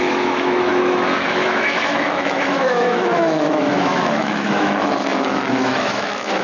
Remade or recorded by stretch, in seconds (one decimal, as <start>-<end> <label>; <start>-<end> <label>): 0.0-6.4 remade